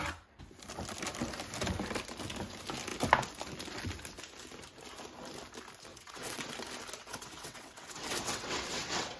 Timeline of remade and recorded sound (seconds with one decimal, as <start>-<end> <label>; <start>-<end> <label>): 0.0-5.9 recorded; 5.9-6.5 remade; 6.5-7.0 recorded; 7.0-9.2 remade